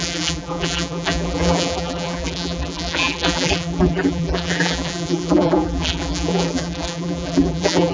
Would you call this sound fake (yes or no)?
yes